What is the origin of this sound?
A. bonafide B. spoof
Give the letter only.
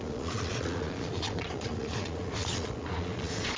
B